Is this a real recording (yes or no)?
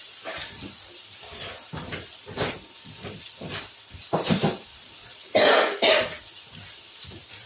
no